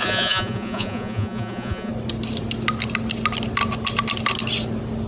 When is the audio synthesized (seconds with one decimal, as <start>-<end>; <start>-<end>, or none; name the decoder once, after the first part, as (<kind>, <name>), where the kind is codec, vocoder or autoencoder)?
0.0-1.9 (vocoder, Vocos)